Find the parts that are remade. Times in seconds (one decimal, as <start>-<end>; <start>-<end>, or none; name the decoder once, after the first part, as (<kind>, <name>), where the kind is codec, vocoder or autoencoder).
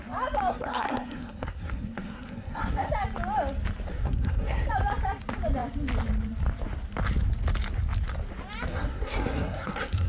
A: 0.5-2.9 (codec, SNAC); 3.9-4.7; 8.7-10.1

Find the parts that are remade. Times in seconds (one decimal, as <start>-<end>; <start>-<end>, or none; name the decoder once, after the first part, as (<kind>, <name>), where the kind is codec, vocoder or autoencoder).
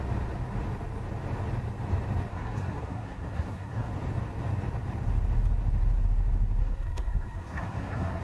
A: 2.3-3.9 (codec, SNAC); 6.6-8.2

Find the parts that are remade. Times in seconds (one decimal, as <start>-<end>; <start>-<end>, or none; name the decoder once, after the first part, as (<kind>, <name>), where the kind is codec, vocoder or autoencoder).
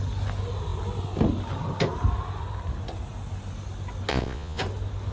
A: 4.1-4.6 (vocoder, Vocos)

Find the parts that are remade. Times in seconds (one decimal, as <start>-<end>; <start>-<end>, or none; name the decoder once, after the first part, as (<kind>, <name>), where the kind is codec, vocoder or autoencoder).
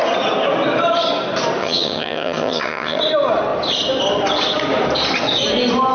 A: 1.6-3.0 (vocoder, HiFi-GAN)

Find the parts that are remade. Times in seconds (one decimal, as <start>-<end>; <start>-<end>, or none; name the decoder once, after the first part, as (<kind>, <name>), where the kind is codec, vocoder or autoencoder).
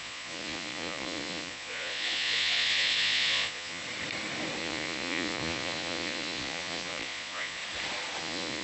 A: 0.0-3.8 (vocoder, Vocos); 4.6-7.6; 8.2-8.6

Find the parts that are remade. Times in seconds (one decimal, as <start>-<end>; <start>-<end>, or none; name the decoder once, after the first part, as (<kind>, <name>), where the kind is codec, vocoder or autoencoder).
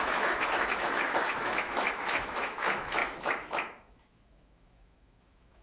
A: 0.0-5.6 (autoencoder, DAC-VAE)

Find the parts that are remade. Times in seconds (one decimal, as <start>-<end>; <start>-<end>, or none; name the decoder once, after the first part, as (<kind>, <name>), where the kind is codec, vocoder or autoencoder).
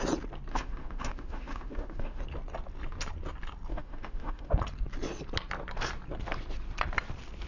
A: 0.5-2.2 (autoencoder, DAC-VAE); 3.7-4.5